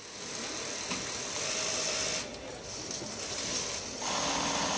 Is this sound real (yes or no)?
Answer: yes